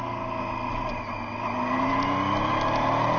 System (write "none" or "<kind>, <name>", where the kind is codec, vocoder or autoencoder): none